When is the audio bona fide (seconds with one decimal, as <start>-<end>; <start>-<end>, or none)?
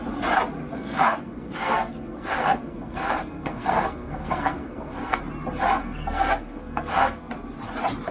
0.0-0.7; 5.2-5.8; 7.3-8.1